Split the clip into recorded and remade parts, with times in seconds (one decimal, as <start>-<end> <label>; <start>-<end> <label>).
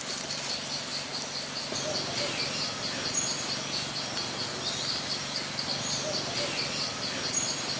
0.0-7.8 recorded